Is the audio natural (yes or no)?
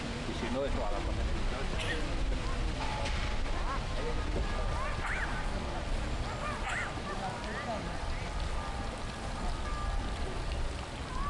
yes